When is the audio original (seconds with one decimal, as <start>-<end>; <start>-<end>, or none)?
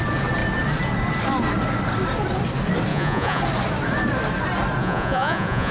0.0-2.9; 3.4-4.8